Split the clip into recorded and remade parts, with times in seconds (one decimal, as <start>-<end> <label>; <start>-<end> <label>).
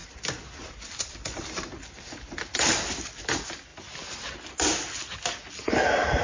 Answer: 0.0-2.7 remade; 2.7-6.2 recorded